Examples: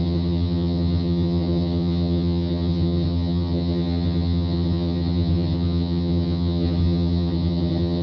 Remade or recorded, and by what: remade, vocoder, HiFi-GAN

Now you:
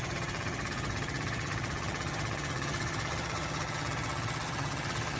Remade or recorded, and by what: remade, vocoder, HiFi-GAN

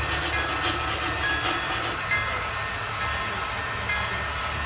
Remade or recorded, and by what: recorded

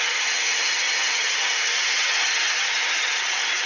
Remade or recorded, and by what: remade, vocoder, HiFi-GAN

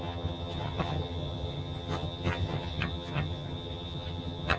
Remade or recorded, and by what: remade, vocoder, HiFi-GAN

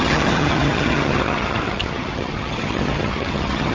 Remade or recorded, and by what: remade, vocoder, HiFi-GAN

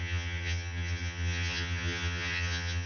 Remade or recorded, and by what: remade, vocoder, HiFi-GAN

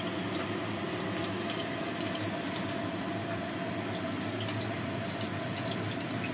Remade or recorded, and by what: recorded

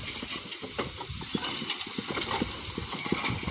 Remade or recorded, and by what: recorded